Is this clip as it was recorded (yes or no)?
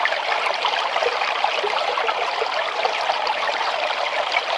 no